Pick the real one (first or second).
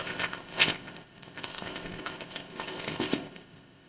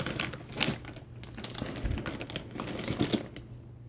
second